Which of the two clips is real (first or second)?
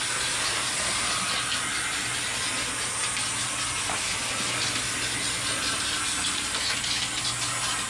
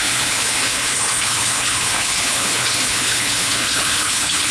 first